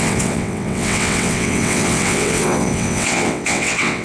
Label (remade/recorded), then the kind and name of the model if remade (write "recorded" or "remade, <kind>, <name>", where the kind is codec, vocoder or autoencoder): remade, vocoder, WaveNeXt